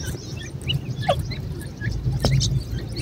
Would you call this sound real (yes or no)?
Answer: yes